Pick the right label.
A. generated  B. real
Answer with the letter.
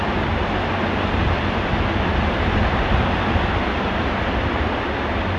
B